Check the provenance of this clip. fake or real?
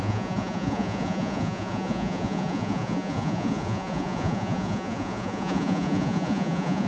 fake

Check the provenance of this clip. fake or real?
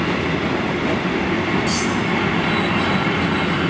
real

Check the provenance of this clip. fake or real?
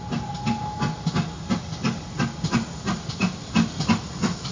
real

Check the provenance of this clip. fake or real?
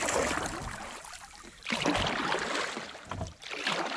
real